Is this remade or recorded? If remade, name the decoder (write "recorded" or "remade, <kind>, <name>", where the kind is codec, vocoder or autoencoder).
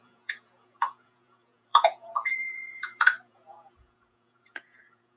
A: remade, vocoder, Vocos